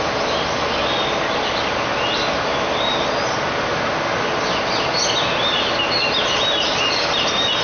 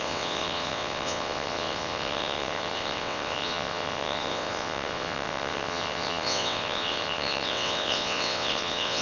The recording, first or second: first